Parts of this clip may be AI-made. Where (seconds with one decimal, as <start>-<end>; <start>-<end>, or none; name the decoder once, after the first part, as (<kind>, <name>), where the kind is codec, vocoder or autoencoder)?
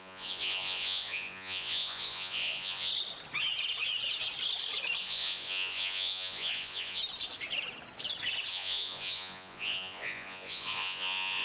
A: 0.0-2.9 (vocoder, Vocos); 5.0-7.0; 8.5-11.4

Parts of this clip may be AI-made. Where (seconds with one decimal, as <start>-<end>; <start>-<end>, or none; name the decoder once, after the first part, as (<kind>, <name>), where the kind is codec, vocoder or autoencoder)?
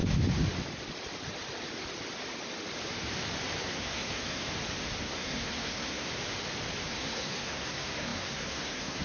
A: 3.6-4.4 (codec, SNAC); 5.0-6.1; 6.9-9.0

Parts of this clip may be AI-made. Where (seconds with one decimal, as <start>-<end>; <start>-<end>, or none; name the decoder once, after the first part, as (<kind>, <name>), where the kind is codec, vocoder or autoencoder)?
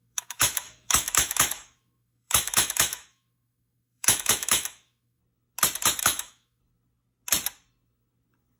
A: 0.0-5.2 (autoencoder, DAC-VAE); 6.0-6.6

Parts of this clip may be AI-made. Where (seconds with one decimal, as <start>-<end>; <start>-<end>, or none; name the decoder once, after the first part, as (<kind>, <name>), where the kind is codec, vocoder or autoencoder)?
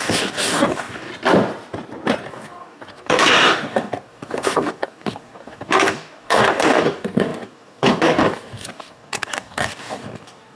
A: 0.0-1.1 (codec, DAC); 2.3-10.6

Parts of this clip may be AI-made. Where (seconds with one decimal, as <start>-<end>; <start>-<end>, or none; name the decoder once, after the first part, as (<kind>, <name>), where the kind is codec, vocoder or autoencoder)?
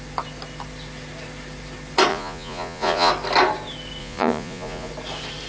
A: 2.1-3.1 (vocoder, Vocos); 4.0-4.9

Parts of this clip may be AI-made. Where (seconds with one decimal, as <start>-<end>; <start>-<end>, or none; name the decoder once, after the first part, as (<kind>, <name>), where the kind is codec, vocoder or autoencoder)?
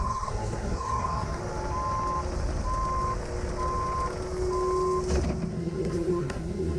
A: 0.0-1.4 (codec, SNAC); 5.5-6.8